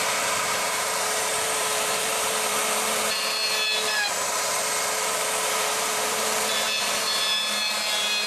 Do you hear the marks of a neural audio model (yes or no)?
yes